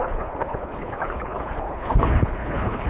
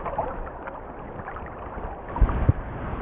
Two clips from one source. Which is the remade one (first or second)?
first